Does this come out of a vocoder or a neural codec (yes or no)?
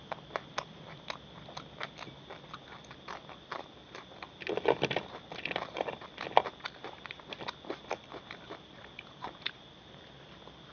no